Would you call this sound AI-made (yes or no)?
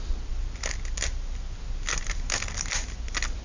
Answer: no